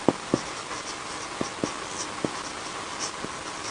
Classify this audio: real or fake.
real